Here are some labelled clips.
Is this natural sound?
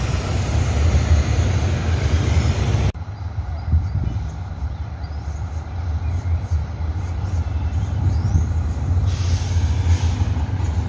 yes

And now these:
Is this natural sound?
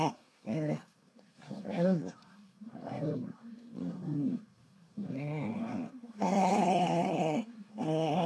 no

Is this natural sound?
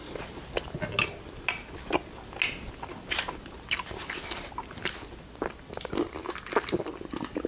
yes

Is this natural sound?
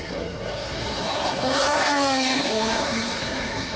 no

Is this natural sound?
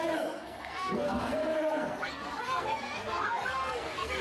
no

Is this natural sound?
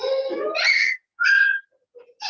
yes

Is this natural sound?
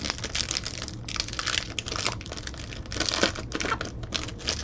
yes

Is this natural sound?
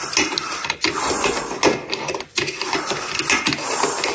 yes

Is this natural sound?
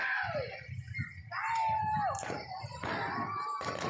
yes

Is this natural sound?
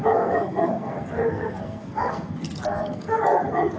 no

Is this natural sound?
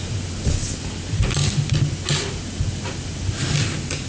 yes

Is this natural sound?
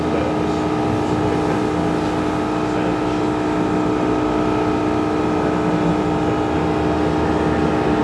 yes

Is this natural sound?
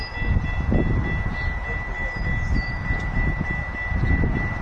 yes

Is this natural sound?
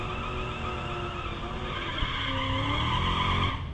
yes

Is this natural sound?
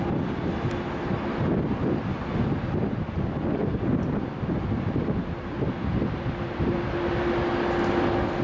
yes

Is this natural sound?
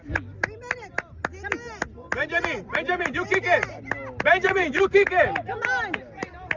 yes